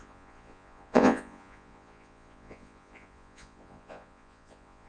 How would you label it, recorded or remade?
remade